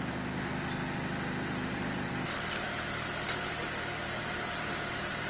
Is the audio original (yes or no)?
yes